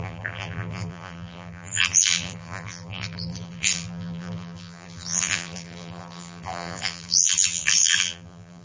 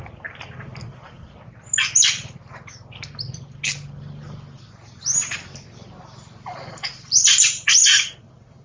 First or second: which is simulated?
first